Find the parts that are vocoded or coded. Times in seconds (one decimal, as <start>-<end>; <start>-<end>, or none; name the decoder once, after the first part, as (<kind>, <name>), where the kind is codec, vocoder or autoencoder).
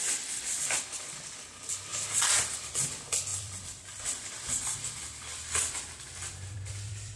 1.9-2.7 (vocoder, BigVGAN v2); 3.3-7.2